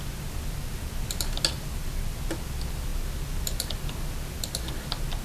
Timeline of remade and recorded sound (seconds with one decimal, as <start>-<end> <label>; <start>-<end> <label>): 0.0-5.2 recorded